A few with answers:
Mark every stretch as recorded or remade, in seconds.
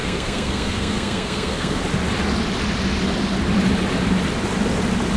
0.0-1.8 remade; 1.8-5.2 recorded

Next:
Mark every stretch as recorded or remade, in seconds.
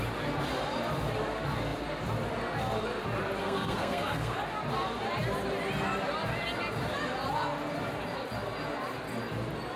0.0-3.4 recorded; 3.4-4.4 remade; 4.4-9.8 recorded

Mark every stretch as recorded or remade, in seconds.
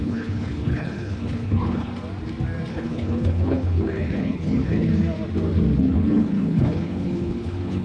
0.0-1.9 remade; 1.9-2.7 recorded; 2.7-4.9 remade; 4.9-5.8 recorded; 5.8-7.8 remade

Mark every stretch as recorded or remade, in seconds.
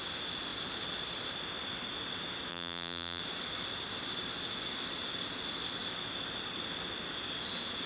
0.0-2.5 recorded; 2.5-3.2 remade; 3.2-7.9 recorded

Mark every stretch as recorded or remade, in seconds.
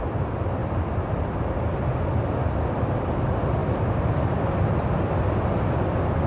0.0-0.6 recorded; 0.6-2.0 remade; 2.0-3.6 recorded; 3.6-4.2 remade; 4.2-6.3 recorded